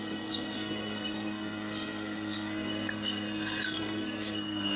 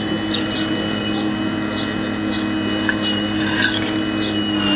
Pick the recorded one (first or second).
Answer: second